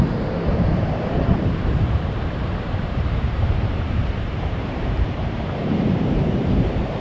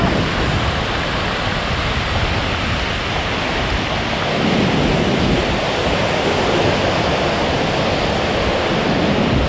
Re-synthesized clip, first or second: first